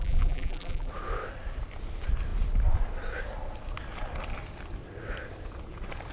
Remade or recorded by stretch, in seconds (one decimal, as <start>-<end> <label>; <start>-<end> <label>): 0.0-0.9 remade; 0.9-6.1 recorded